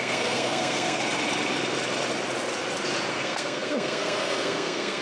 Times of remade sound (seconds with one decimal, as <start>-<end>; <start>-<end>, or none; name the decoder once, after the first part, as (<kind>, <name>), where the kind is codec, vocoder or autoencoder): 0.0-1.0 (codec, SNAC); 3.1-5.0